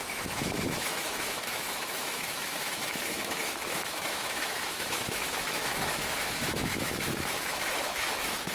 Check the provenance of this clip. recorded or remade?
remade